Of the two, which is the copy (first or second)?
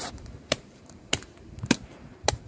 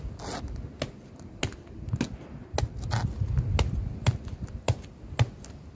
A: first